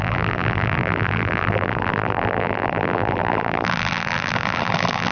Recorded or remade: remade